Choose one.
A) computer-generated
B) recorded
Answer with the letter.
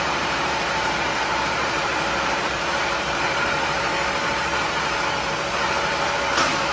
A